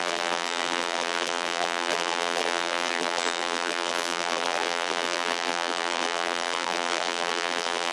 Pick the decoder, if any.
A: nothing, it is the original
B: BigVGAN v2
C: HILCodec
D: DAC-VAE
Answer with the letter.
B